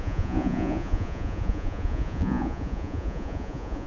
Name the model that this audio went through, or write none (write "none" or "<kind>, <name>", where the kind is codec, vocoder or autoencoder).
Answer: vocoder, Vocos